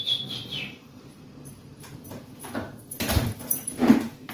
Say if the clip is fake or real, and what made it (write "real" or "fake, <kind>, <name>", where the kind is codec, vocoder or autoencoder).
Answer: fake, vocoder, BigVGAN v2